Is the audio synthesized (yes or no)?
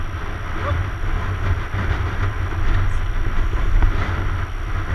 no